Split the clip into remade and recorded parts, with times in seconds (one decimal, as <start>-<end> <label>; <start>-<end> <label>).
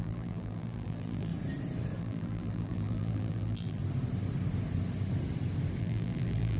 0.0-1.3 remade; 1.3-2.0 recorded; 2.0-3.8 remade; 3.8-5.8 recorded; 5.8-6.6 remade